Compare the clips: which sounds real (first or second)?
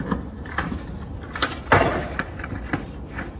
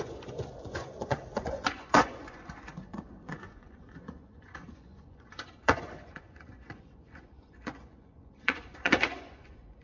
first